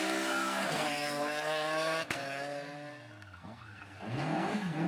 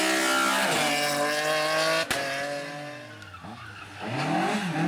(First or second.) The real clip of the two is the second